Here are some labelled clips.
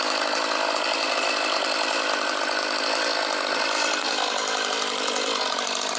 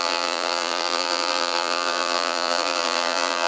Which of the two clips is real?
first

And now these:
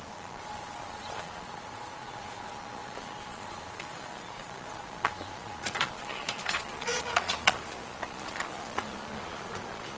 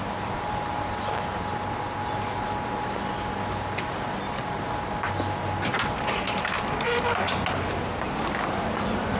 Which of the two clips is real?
second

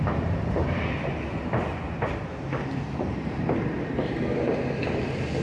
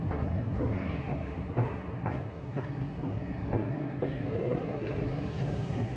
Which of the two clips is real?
first